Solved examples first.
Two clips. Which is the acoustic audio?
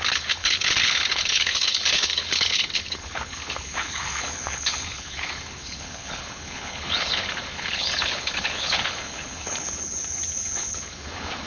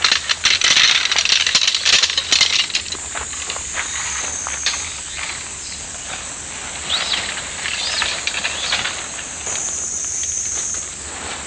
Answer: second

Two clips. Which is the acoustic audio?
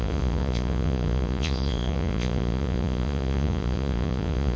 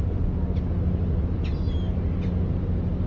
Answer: second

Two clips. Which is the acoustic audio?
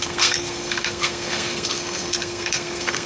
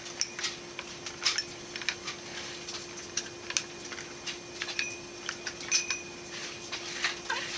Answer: second